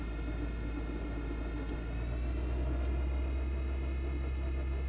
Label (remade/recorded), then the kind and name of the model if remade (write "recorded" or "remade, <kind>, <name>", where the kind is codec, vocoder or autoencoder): recorded